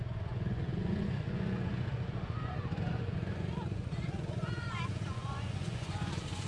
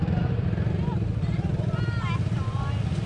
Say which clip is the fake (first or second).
first